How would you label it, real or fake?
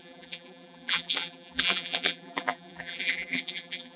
fake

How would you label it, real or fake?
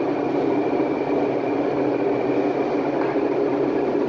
real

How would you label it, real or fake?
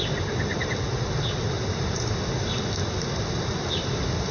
real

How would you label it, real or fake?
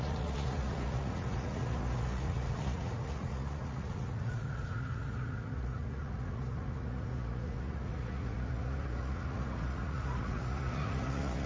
fake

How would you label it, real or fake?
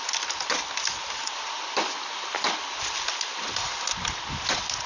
real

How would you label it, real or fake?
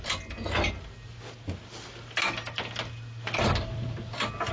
real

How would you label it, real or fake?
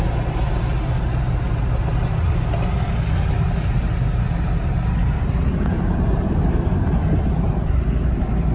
real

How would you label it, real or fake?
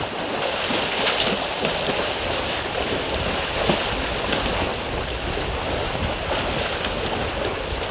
real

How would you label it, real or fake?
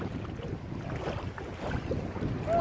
real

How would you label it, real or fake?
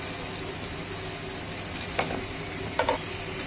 real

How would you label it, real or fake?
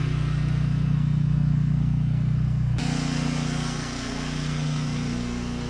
fake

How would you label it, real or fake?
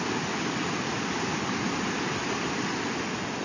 real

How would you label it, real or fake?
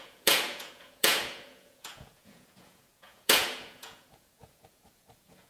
fake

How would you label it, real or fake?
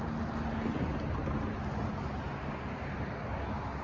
real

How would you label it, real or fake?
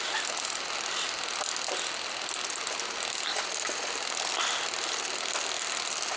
real